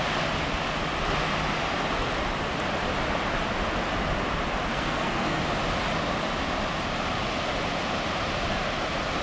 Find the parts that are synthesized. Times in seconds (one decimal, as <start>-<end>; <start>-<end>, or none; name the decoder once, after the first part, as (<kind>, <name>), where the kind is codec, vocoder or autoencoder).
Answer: 4.7-5.4 (codec, SNAC)